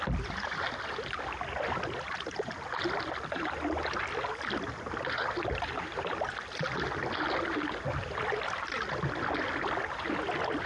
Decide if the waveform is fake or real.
real